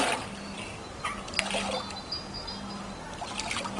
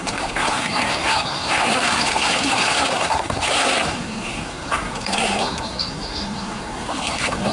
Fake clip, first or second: second